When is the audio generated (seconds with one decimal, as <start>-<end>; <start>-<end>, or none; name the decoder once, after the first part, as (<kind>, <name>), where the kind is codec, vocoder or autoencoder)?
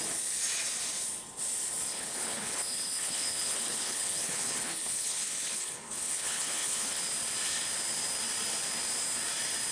1.9-7.0 (codec, HILCodec)